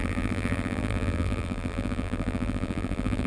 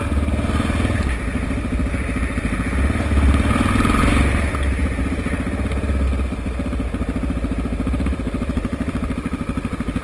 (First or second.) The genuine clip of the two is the second